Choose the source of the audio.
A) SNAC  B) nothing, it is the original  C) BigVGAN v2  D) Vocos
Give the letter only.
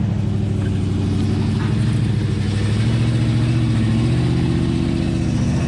B